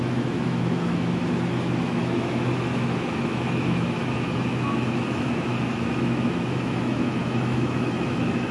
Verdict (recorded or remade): remade